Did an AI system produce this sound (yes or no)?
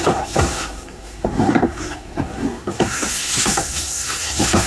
yes